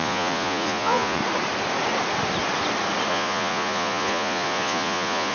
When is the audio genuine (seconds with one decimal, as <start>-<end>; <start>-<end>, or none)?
1.2-3.1

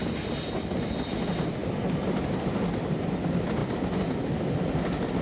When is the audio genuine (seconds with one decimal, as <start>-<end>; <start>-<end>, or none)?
0.0-5.2

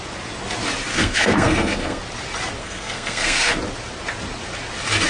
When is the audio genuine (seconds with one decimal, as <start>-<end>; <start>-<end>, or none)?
0.0-0.9; 2.0-2.6; 3.5-5.1

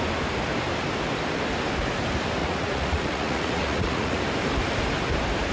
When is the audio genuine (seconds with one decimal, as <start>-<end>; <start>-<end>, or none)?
0.0-2.4; 4.2-5.5

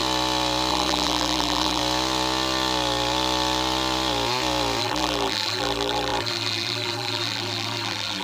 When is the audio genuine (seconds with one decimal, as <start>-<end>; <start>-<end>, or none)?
0.0-0.7; 1.8-4.8

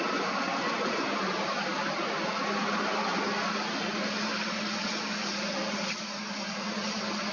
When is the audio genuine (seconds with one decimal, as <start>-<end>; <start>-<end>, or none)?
1.7-4.3

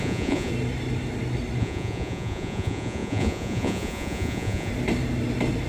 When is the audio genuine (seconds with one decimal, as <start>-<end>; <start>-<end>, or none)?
0.5-1.6; 4.7-5.7